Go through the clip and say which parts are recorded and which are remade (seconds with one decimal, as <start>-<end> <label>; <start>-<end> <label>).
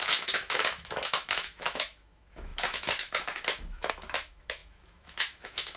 0.0-5.8 remade